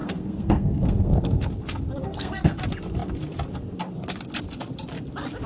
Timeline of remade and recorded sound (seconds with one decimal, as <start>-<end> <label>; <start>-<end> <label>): 0.0-1.5 remade; 1.5-2.0 recorded; 2.0-2.6 remade; 2.6-5.5 recorded